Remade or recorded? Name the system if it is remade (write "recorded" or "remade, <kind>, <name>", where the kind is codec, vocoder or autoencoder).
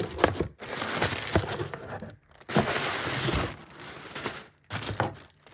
recorded